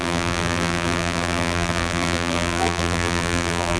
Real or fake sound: fake